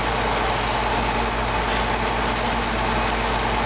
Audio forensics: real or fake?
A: real